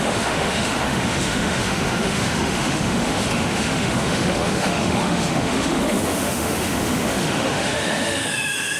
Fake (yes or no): yes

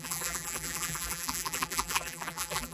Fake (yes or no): yes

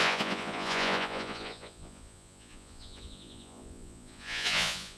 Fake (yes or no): yes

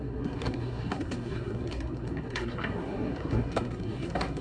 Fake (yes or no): yes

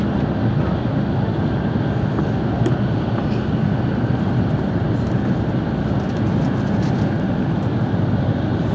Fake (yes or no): no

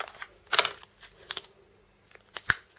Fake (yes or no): no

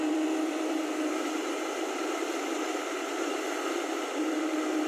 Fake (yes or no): yes